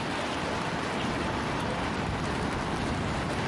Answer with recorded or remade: recorded